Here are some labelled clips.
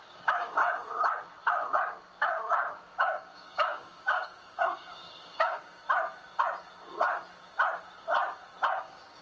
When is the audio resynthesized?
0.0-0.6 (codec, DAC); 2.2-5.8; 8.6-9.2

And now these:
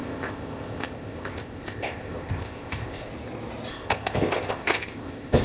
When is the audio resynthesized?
0.0-3.1 (codec, ZipCodec); 3.7-5.4

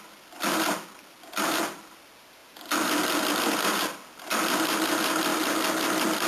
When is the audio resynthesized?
0.5-2.0 (vocoder, BigVGAN v2); 5.3-6.3

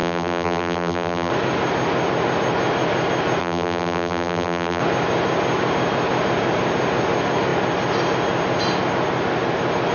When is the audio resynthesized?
0.0-1.3 (vocoder, BigVGAN v2); 3.4-4.8